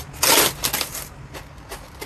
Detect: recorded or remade recorded